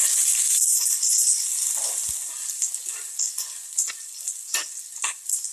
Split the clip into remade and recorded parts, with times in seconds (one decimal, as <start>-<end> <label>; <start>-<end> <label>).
0.0-1.9 remade; 1.9-5.5 recorded